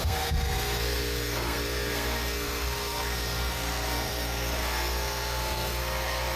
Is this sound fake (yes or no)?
yes